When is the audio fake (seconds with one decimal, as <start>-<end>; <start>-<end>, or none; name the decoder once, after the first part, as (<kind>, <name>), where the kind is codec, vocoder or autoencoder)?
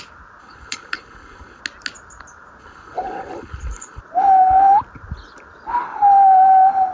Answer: 0.4-1.6 (codec, HILCodec); 2.6-4.0